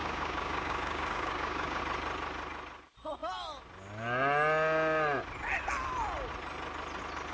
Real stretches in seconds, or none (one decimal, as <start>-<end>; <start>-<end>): 1.8-7.3